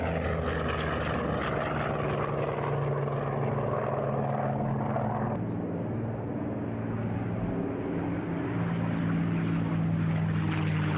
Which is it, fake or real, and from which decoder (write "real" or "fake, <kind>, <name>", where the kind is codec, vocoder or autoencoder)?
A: real